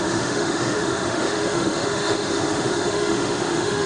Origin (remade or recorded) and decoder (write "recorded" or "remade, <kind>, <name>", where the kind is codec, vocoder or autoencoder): remade, autoencoder, DAC-VAE